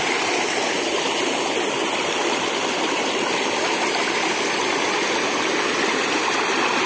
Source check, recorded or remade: recorded